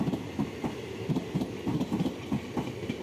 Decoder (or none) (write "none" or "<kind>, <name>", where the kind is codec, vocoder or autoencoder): none